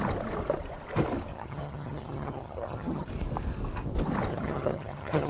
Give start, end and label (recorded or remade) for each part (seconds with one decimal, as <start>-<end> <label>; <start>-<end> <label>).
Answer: 0.0-1.3 recorded; 1.3-3.1 remade; 3.1-4.3 recorded; 4.3-5.3 remade